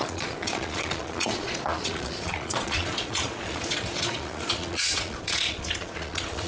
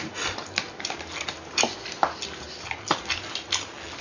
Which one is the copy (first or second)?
first